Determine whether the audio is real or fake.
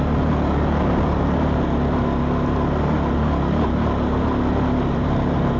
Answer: real